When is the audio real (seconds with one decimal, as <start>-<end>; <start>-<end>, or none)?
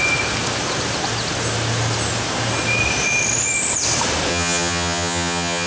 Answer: 0.0-4.3